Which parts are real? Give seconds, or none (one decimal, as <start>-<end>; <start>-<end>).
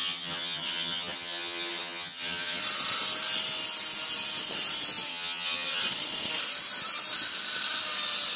2.6-5.1; 5.8-8.4